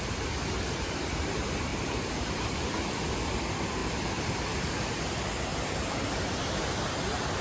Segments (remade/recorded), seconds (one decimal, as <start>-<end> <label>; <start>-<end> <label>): 0.0-1.7 recorded; 1.7-2.6 remade; 2.6-3.8 recorded; 3.8-4.7 remade; 4.7-5.5 recorded; 5.5-6.8 remade; 6.8-7.4 recorded